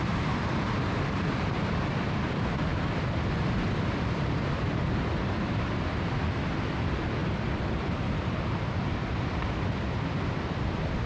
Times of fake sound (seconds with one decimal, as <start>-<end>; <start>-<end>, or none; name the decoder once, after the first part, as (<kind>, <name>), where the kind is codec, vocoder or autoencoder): 2.7-3.6 (vocoder, BigVGAN v2)